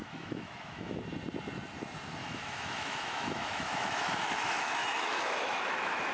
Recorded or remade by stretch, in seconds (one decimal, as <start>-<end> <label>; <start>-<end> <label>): 0.0-1.0 remade; 1.0-2.2 recorded; 2.2-6.1 remade